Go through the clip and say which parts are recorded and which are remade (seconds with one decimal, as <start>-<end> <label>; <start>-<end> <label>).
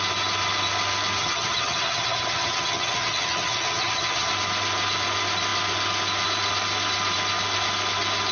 0.0-1.2 recorded; 1.2-4.3 remade; 4.3-8.3 recorded